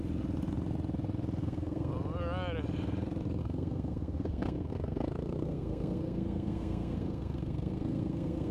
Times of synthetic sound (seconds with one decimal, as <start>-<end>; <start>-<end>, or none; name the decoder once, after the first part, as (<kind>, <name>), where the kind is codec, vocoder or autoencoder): 1.4-1.9 (codec, SNAC); 3.4-8.5